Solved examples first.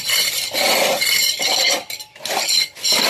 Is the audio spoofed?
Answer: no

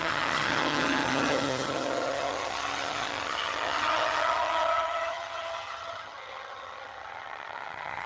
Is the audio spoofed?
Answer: yes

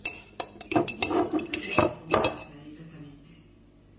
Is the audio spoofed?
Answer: no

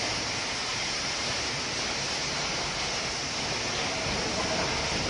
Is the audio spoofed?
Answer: no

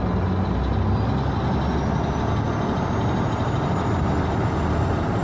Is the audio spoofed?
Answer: no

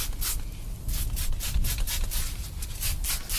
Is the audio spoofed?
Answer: no